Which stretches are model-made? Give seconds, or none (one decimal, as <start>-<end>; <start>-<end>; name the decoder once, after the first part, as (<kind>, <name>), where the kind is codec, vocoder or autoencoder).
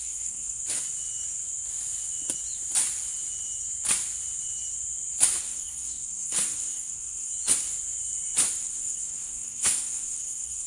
0.0-0.6 (codec, SNAC); 5.4-7.3; 8.6-10.7